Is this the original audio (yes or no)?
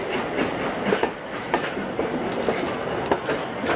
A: yes